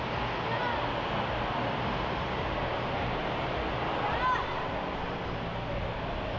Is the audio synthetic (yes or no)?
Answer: no